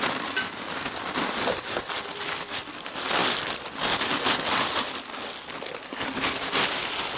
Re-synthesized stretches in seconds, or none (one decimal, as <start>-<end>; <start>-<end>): none